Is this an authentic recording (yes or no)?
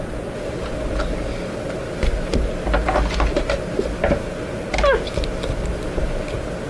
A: yes